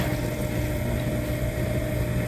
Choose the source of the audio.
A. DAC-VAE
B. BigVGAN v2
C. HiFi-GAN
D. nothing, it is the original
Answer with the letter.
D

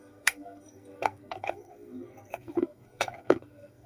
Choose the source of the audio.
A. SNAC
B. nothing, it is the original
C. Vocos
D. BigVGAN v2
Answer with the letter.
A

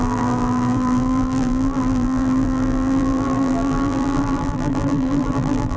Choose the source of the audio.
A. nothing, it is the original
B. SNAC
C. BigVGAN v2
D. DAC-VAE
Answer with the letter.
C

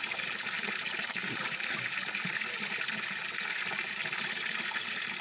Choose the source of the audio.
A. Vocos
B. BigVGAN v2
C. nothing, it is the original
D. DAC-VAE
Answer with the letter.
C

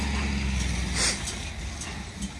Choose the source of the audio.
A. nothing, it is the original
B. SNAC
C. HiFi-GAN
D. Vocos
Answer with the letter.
A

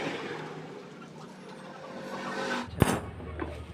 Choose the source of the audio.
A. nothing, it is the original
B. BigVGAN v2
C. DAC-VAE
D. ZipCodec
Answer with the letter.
A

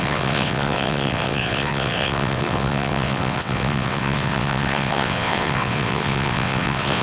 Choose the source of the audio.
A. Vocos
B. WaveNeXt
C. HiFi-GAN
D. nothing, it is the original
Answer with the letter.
B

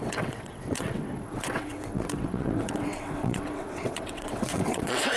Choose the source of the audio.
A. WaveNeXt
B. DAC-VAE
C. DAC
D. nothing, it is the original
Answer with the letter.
A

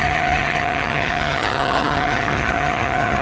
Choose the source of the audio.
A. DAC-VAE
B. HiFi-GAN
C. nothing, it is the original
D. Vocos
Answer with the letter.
B